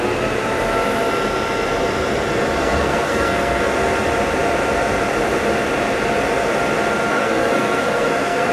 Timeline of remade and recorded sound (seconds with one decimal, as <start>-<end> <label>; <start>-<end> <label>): 0.0-2.6 recorded; 2.6-3.6 remade; 3.6-7.1 recorded; 7.1-8.5 remade